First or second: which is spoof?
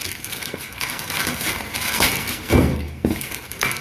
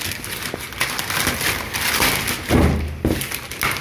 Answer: first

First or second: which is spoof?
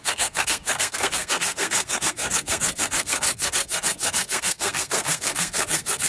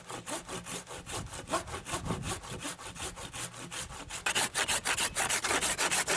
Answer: first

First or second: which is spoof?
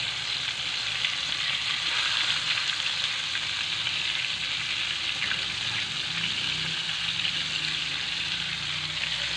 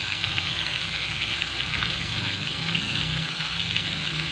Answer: second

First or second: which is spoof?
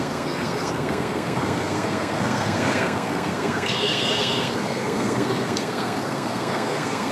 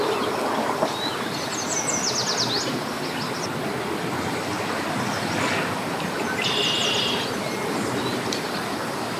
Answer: first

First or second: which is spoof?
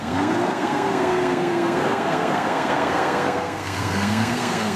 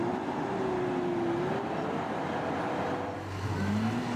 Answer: first